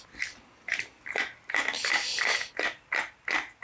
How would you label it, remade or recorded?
recorded